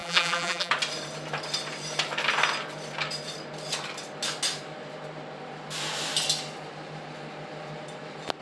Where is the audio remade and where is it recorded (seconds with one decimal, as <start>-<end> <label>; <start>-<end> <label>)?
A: 0.0-0.7 remade; 0.7-8.4 recorded